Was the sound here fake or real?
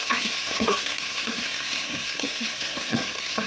fake